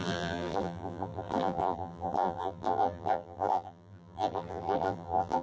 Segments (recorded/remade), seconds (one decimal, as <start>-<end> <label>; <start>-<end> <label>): 0.0-5.4 remade